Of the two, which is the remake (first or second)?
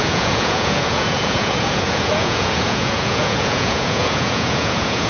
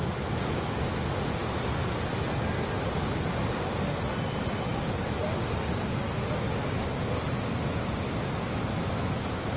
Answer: first